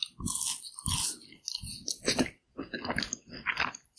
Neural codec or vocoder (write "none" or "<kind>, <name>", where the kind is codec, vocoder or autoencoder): none